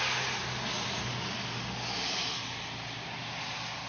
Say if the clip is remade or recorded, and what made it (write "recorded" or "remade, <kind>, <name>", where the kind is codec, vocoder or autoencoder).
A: recorded